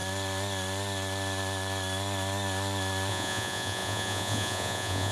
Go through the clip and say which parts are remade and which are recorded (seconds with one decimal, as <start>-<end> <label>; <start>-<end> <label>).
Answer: 0.0-3.1 recorded; 3.1-5.1 remade